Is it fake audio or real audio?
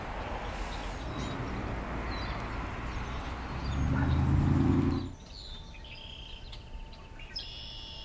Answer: real